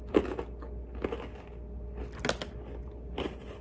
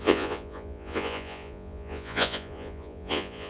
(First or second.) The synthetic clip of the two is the second